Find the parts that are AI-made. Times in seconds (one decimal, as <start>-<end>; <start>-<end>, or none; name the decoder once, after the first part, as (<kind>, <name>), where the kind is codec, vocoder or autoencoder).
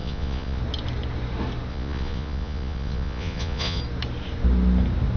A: 0.0-0.6 (vocoder, Vocos); 1.7-3.8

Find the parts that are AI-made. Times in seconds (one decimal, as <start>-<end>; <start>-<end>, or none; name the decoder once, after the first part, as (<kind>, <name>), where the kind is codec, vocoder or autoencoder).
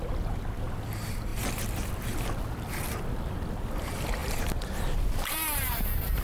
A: none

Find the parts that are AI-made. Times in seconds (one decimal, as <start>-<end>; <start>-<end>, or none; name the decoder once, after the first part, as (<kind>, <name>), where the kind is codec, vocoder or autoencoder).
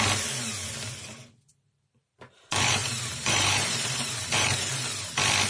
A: 1.5-4.7 (vocoder, BigVGAN v2)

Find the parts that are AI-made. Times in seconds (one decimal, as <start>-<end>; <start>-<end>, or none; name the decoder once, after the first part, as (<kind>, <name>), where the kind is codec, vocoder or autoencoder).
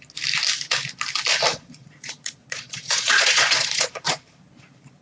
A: 1.5-4.2 (vocoder, Vocos)